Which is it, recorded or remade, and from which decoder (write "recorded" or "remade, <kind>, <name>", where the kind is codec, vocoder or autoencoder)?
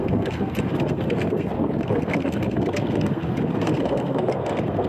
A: remade, codec, SNAC